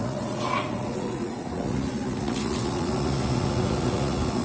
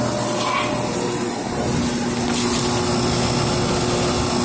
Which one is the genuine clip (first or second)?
second